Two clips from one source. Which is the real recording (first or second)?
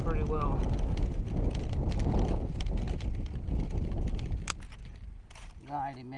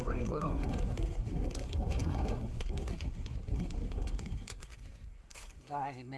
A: first